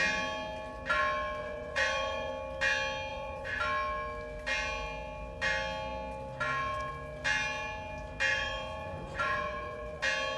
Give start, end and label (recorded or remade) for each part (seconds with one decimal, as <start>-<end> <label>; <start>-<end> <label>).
0.0-1.4 recorded; 1.4-2.3 remade; 2.3-3.1 recorded; 3.1-3.6 remade; 3.6-8.3 recorded; 8.3-10.0 remade; 10.0-10.4 recorded

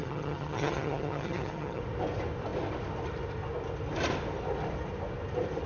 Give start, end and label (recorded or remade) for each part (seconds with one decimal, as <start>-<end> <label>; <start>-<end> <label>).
0.0-1.8 remade; 1.8-5.7 recorded

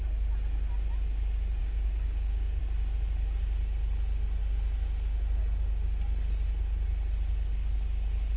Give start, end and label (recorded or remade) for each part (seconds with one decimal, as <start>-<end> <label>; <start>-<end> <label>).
0.0-1.6 recorded; 1.6-2.6 remade; 2.6-8.4 recorded